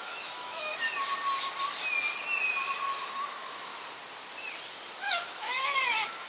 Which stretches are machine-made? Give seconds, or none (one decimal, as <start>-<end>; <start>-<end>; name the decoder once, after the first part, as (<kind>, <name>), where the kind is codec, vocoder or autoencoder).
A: 0.0-0.7 (autoencoder, DAC-VAE); 2.9-3.7; 5.0-6.3